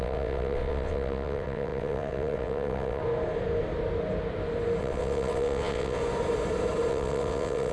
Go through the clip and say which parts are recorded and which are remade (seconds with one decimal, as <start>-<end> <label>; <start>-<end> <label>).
0.0-3.0 remade; 3.0-4.8 recorded; 4.8-6.0 remade; 6.0-6.9 recorded; 6.9-7.7 remade